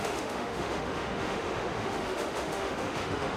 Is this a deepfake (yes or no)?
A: yes